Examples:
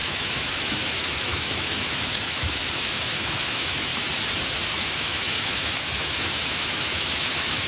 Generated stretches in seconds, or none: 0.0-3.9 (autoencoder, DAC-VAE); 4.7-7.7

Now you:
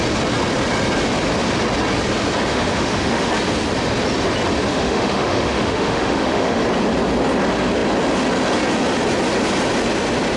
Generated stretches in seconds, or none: 2.5-3.3 (autoencoder, DAC-VAE); 4.7-6.6

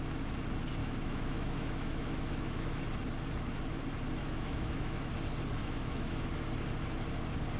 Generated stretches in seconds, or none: 0.8-2.8 (autoencoder, DAC-VAE); 4.2-5.1; 5.6-6.3